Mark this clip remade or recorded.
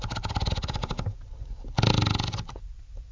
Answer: recorded